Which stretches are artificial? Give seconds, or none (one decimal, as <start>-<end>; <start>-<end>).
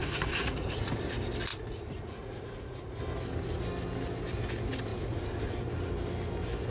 0.0-1.0; 1.5-3.0; 4.9-5.6